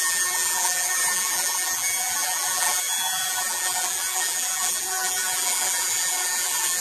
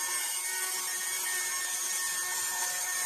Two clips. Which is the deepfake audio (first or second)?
first